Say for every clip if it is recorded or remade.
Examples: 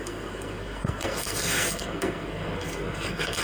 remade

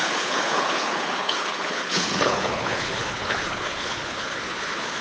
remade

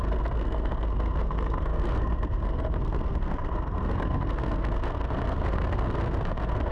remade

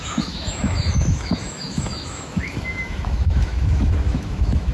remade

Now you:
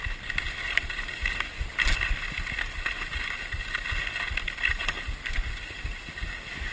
recorded